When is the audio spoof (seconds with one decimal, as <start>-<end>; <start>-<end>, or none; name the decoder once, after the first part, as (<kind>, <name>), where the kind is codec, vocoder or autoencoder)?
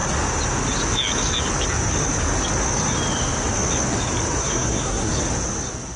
4.4-5.1 (codec, SNAC)